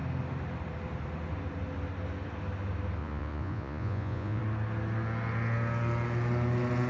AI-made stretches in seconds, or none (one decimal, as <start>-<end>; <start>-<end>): 3.0-4.4